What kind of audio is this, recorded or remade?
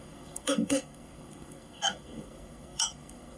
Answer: remade